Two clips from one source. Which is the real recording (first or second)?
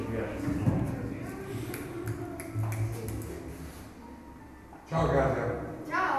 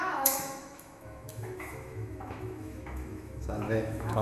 first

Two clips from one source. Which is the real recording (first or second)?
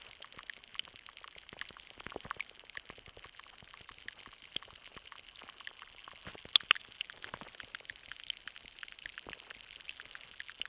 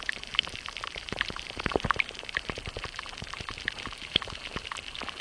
first